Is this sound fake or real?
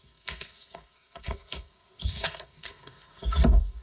fake